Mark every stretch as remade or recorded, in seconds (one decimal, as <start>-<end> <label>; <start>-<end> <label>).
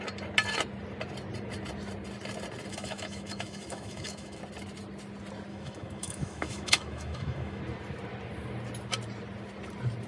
0.0-2.7 recorded; 2.7-4.4 remade; 4.4-5.5 recorded; 5.5-7.6 remade; 7.6-10.1 recorded